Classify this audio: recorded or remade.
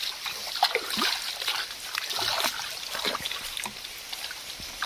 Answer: recorded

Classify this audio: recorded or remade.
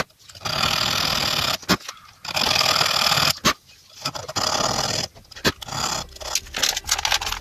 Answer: recorded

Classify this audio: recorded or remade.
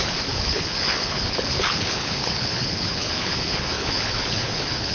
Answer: remade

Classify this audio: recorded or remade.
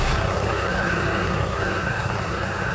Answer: remade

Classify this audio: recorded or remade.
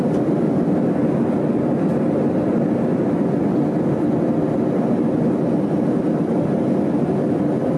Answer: recorded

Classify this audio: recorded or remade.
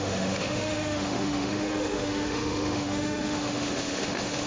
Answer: remade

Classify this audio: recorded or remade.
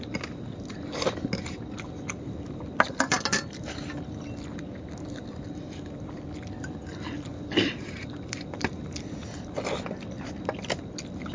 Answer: recorded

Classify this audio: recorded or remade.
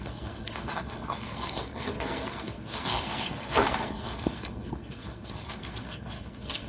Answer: remade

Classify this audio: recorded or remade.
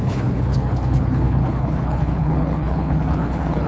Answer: remade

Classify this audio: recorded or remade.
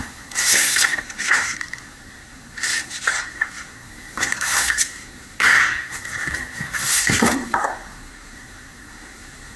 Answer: remade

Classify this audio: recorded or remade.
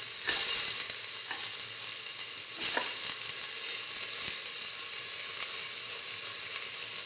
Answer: recorded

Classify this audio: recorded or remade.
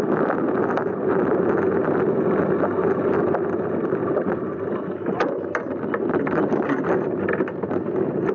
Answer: recorded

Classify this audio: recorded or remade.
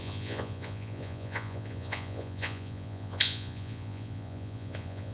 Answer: remade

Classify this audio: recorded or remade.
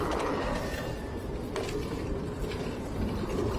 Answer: recorded